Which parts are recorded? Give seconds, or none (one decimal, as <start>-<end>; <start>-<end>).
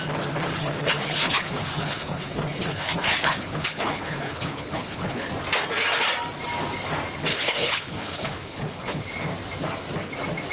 0.0-0.6; 5.3-7.3; 9.1-10.5